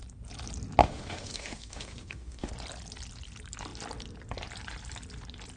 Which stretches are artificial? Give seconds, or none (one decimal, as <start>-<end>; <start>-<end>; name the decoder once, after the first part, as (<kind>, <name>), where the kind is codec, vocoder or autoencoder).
0.8-2.5 (autoencoder, DAC-VAE)